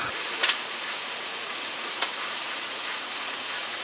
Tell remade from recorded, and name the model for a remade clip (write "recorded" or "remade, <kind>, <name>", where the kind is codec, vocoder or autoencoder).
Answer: remade, vocoder, Vocos